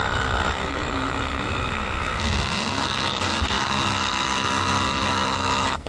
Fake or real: fake